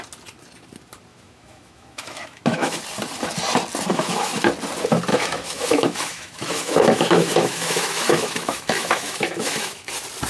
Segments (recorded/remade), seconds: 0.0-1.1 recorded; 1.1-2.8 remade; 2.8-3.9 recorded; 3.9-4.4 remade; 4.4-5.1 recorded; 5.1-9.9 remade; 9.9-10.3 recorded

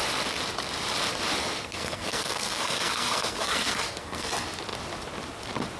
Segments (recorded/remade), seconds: 0.0-1.4 recorded; 1.4-4.3 remade; 4.3-5.8 recorded